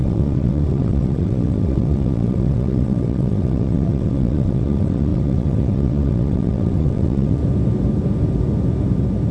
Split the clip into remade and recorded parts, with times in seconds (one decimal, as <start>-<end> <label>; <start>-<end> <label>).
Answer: 0.0-7.4 remade; 7.4-9.3 recorded